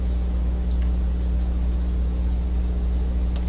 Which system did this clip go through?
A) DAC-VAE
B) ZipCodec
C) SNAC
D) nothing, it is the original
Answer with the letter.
D